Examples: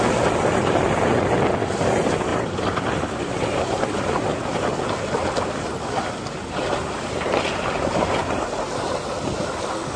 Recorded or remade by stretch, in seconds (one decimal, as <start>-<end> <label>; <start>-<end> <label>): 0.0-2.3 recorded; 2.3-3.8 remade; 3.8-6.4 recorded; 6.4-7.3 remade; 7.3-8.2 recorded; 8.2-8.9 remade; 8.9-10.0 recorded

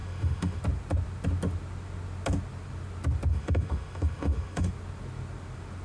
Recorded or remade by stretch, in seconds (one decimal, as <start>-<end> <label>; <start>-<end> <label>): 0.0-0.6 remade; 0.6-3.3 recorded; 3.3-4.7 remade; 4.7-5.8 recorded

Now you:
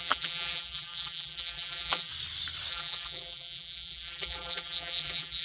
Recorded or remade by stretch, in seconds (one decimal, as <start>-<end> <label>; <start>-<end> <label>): 0.0-2.1 remade; 2.1-2.7 recorded; 2.7-5.4 remade